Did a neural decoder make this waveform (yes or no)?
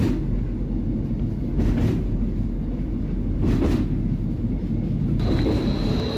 no